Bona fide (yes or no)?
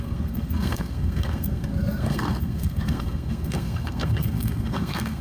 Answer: no